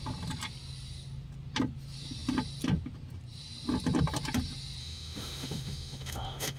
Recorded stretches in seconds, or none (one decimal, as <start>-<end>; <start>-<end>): 0.0-4.8